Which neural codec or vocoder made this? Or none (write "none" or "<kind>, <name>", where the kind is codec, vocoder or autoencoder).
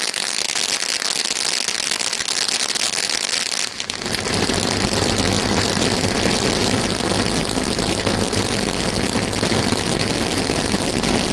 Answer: none